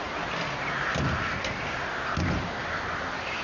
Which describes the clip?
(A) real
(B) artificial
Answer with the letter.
A